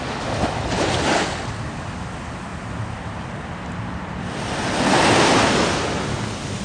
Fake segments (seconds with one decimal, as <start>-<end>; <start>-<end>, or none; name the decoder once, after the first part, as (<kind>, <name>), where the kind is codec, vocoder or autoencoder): none